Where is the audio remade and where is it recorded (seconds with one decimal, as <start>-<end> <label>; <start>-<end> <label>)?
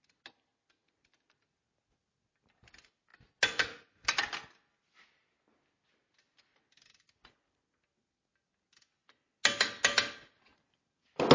0.0-11.3 recorded